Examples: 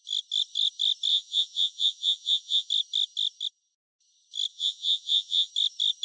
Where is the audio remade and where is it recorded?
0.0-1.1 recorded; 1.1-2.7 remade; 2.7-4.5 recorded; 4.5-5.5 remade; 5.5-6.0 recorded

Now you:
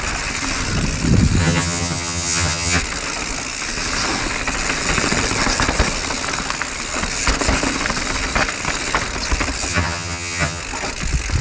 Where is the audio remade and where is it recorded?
0.0-1.4 recorded; 1.4-2.8 remade; 2.8-9.7 recorded; 9.7-10.6 remade; 10.6-11.4 recorded

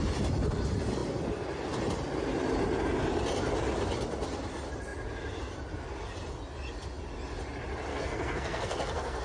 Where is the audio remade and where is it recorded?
0.0-7.9 recorded; 7.9-9.2 remade

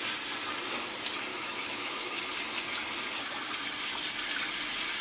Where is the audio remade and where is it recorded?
0.0-1.3 recorded; 1.3-2.2 remade; 2.2-5.0 recorded

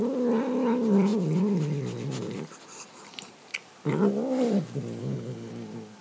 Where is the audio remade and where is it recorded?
0.0-5.0 recorded; 5.0-5.5 remade; 5.5-6.0 recorded

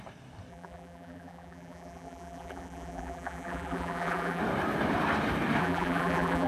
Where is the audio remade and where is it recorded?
0.0-0.5 recorded; 0.5-4.4 remade; 4.4-5.6 recorded; 5.6-6.5 remade

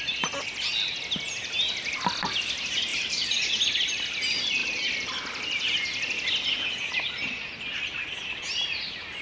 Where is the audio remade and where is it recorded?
0.0-9.2 recorded

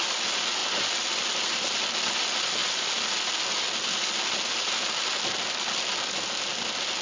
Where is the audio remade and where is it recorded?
0.0-7.0 recorded